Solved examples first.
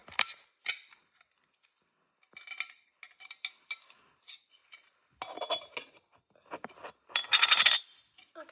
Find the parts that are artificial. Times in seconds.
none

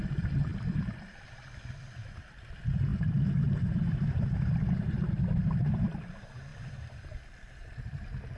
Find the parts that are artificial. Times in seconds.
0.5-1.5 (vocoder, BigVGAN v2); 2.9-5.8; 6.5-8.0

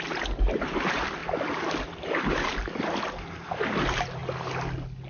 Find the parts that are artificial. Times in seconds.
none

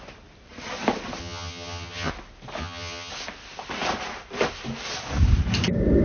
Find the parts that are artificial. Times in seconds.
1.2-2.1 (vocoder, HiFi-GAN); 2.6-3.1

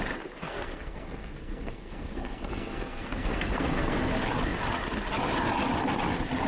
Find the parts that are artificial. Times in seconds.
0.4-4.1 (codec, SNAC)